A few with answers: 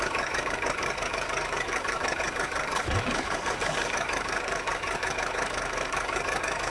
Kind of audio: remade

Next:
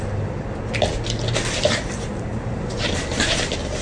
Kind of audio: recorded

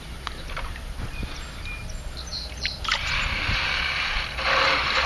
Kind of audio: remade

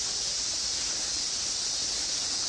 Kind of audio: recorded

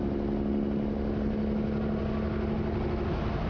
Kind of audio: recorded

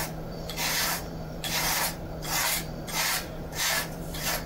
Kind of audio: remade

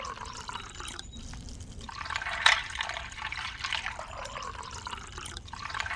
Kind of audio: remade